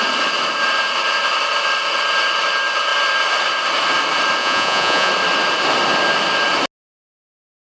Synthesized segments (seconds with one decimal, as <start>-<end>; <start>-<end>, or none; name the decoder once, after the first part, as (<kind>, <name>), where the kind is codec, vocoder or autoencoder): 4.4-5.1 (vocoder, Vocos)